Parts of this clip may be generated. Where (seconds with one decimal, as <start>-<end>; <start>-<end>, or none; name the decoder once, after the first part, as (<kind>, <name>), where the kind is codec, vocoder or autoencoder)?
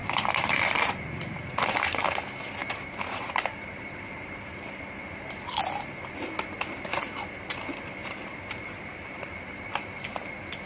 0.0-1.6 (vocoder, BigVGAN v2); 2.6-5.6; 8.0-9.5